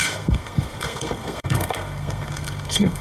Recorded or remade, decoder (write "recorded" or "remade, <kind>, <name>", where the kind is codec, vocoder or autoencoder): remade, codec, SNAC